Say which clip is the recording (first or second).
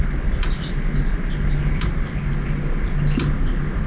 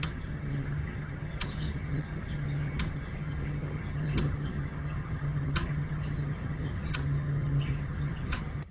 first